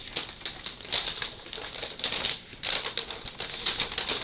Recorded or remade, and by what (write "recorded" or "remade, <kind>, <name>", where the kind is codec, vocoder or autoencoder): recorded